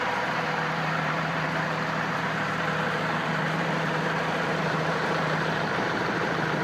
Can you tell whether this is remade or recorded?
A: remade